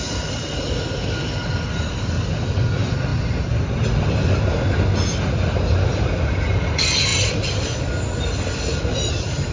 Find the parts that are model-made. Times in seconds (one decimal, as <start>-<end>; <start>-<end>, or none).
none